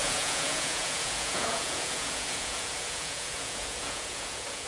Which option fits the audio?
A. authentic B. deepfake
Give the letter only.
B